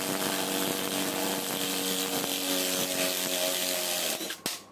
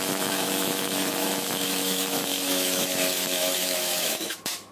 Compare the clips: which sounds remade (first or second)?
second